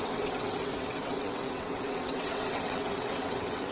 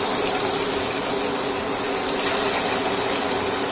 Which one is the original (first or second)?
second